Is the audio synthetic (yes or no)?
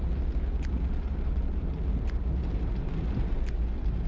no